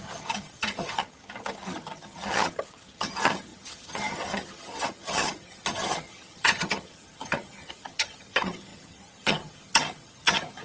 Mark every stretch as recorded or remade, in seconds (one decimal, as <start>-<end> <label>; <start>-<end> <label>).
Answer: 0.0-10.6 remade